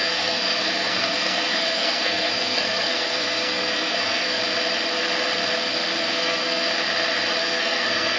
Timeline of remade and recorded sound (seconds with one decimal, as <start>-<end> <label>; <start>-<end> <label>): 0.0-4.4 remade; 4.4-6.0 recorded; 6.0-6.7 remade; 6.7-7.4 recorded; 7.4-8.2 remade